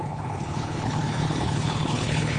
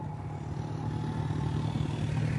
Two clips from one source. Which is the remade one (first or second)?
first